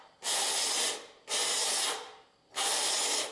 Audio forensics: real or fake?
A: real